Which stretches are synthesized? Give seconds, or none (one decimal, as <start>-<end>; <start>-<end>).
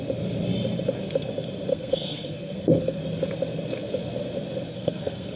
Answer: 1.7-3.0; 4.7-5.4